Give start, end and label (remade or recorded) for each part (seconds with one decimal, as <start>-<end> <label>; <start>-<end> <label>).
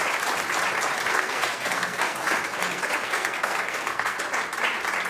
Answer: 0.0-1.1 recorded; 1.1-4.2 remade; 4.2-5.1 recorded